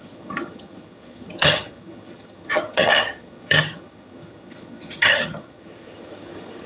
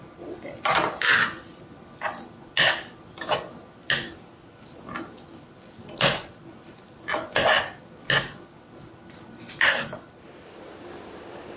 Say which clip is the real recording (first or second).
second